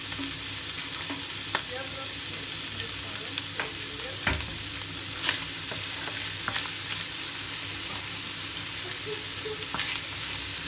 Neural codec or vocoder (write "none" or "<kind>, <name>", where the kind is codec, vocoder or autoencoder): none